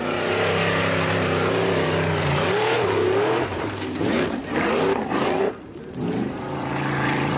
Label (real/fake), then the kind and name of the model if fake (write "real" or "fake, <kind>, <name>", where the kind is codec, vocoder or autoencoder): fake, vocoder, BigVGAN v2